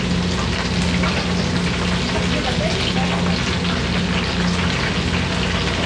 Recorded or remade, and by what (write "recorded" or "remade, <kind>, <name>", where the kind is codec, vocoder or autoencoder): recorded